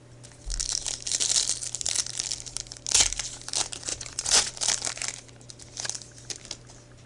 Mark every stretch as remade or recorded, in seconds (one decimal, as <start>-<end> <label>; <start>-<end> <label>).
0.0-3.9 recorded; 3.9-4.5 remade; 4.5-7.1 recorded